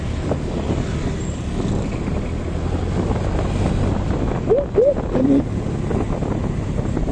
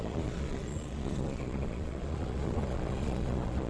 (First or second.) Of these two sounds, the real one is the first